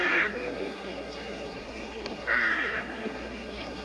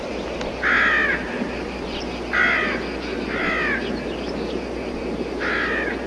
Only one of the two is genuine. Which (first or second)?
second